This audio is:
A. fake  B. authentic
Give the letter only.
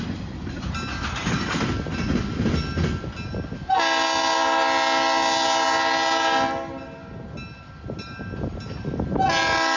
B